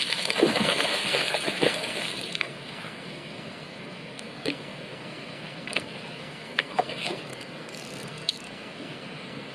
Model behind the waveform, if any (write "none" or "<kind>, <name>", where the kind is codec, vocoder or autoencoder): codec, SNAC